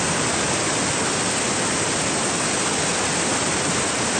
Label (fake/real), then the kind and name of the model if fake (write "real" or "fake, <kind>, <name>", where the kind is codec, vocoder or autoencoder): real